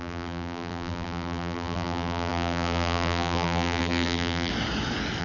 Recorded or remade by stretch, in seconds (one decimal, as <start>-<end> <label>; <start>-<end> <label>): 0.0-4.5 remade; 4.5-5.2 recorded